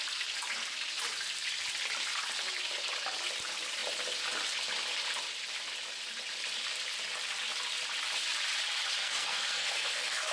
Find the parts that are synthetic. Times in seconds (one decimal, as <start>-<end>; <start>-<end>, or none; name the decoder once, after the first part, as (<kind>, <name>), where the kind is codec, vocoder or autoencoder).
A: 9.0-10.3 (codec, SNAC)